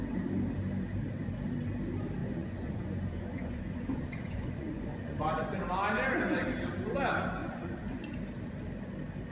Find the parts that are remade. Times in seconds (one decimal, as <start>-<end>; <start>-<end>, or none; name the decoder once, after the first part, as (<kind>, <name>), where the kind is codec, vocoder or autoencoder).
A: 2.2-5.6 (vocoder, Vocos); 7.4-8.1

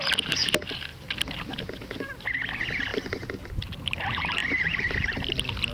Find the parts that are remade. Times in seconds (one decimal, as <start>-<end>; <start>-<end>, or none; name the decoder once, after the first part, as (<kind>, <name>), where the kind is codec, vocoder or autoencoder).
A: none

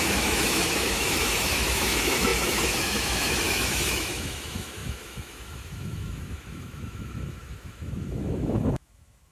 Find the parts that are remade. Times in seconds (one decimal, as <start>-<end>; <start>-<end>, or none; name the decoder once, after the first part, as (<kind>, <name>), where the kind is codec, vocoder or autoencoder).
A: 0.0-9.3 (autoencoder, DAC-VAE)

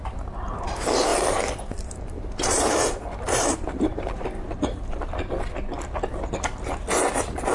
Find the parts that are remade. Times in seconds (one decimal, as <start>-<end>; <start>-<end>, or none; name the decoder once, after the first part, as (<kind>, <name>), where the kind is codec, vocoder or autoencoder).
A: 1.1-5.1 (vocoder, BigVGAN v2)

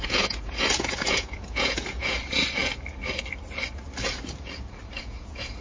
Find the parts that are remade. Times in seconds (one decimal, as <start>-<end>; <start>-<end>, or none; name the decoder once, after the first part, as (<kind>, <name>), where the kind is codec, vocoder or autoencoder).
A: 0.0-2.6 (vocoder, Vocos); 5.0-5.6

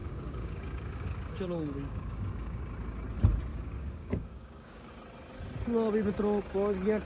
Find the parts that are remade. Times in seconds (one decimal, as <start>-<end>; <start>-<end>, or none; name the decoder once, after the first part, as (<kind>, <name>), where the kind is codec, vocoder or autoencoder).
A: 0.0-2.6 (codec, DAC); 3.5-4.9